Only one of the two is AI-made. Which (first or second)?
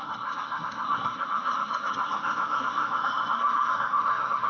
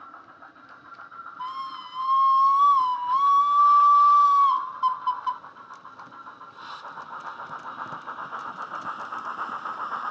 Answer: first